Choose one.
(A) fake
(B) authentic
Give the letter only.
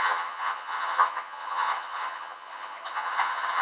A